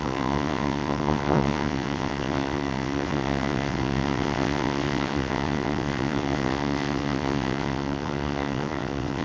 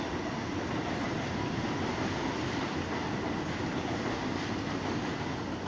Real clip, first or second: second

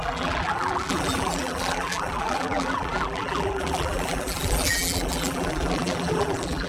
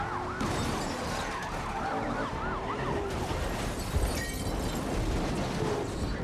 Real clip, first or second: second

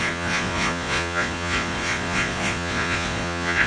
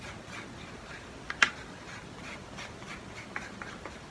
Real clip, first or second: second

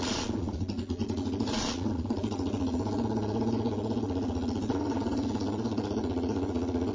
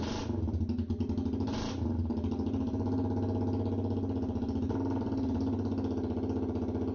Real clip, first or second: second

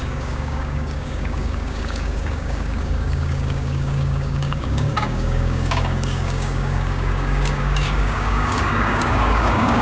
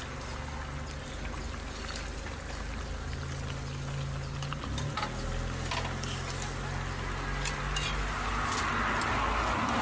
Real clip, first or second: second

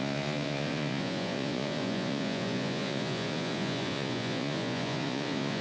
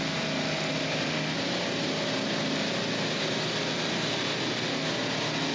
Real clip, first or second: second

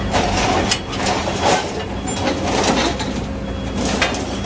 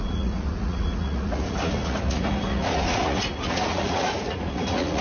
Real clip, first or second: first